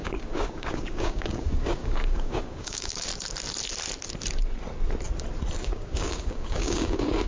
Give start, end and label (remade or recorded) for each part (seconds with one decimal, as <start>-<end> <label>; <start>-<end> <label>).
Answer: 0.0-3.1 remade; 3.1-5.6 recorded; 5.6-7.3 remade